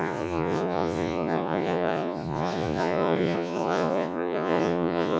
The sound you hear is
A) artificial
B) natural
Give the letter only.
A